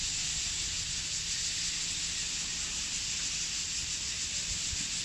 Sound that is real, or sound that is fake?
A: real